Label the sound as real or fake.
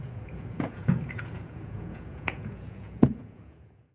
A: fake